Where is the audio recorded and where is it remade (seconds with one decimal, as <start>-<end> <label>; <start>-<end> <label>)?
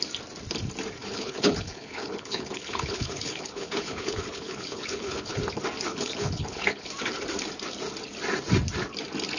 0.0-1.0 recorded; 1.0-5.4 remade; 5.4-5.9 recorded; 5.9-6.9 remade; 6.9-9.4 recorded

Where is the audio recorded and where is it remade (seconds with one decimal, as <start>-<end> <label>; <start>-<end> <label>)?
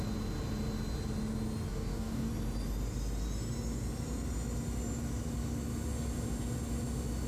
0.0-1.7 recorded; 1.7-2.3 remade; 2.3-7.3 recorded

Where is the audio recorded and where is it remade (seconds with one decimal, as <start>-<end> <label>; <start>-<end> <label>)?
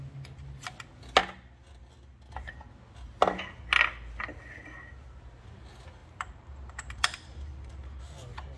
0.0-6.0 recorded; 6.0-8.0 remade; 8.0-8.6 recorded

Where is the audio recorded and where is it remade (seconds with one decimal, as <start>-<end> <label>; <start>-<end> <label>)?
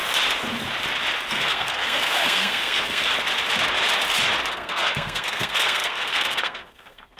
0.0-1.3 recorded; 1.3-3.1 remade; 3.1-4.5 recorded; 4.5-7.2 remade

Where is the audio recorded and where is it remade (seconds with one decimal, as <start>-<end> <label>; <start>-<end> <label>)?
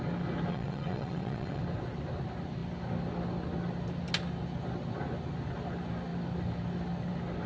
0.0-0.5 recorded; 0.5-1.6 remade; 1.6-7.5 recorded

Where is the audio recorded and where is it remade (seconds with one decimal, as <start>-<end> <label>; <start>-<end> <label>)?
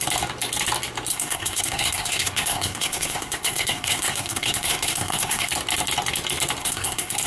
0.0-1.1 recorded; 1.1-5.5 remade; 5.5-6.6 recorded; 6.6-7.3 remade